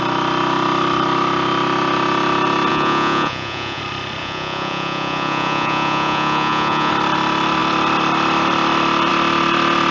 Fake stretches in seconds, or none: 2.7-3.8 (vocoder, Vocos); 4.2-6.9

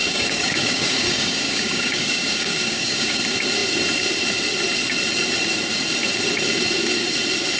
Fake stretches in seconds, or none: 0.0-3.2 (codec, DAC)

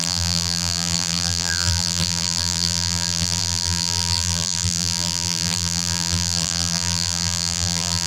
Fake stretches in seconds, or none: 0.0-8.1 (vocoder, BigVGAN v2)

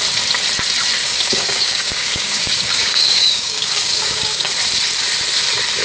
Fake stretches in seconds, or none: 1.0-4.5 (codec, DAC)

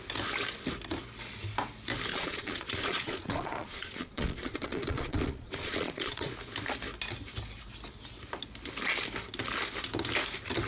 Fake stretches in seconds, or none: 2.1-6.3 (vocoder, Vocos)